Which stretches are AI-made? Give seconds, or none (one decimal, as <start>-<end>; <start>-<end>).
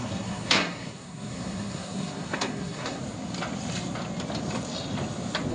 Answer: 0.0-3.0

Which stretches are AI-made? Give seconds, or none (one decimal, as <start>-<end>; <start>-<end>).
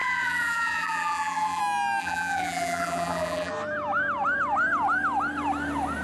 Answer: 0.0-1.6; 2.0-3.5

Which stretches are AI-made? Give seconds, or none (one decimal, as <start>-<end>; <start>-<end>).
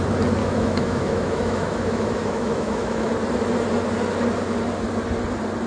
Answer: 0.4-3.1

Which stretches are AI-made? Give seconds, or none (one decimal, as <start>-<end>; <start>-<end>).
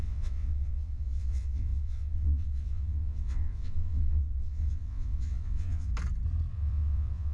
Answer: 0.0-5.9; 6.5-7.3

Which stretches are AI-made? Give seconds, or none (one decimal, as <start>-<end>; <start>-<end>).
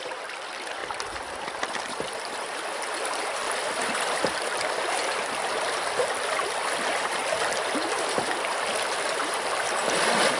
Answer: 0.0-10.4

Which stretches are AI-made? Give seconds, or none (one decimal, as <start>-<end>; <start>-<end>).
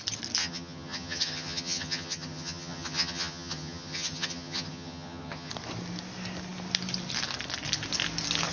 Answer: 0.4-5.5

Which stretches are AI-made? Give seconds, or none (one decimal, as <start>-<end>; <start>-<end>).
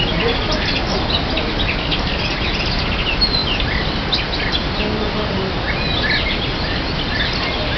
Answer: none